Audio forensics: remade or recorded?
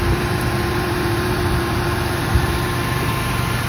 remade